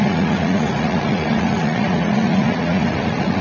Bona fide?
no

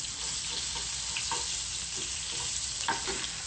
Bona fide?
yes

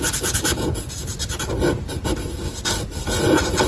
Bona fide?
yes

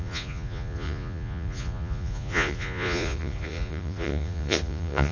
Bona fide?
no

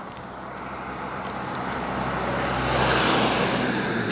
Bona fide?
yes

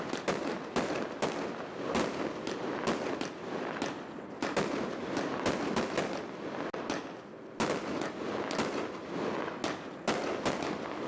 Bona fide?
yes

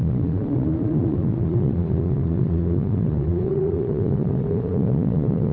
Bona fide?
no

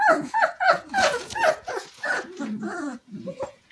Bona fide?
no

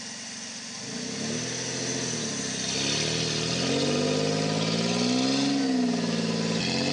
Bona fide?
yes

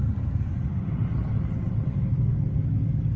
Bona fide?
yes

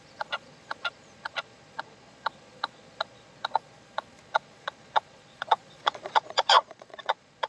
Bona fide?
no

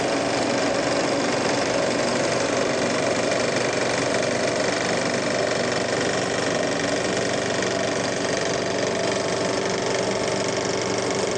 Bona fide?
yes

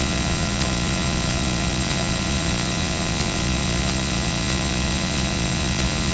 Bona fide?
no